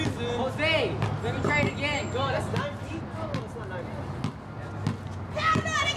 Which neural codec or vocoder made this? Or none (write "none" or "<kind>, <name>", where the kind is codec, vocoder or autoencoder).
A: none